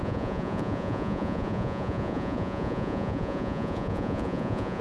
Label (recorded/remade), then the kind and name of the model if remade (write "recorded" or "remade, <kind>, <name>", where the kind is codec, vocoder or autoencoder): remade, vocoder, Vocos